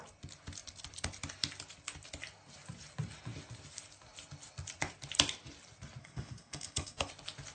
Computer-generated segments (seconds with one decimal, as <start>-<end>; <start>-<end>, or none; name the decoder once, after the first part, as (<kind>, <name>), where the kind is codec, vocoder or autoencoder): 6.0-7.1 (codec, SNAC)